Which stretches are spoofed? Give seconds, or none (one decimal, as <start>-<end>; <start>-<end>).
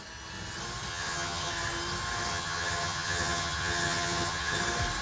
0.9-1.5; 2.3-4.6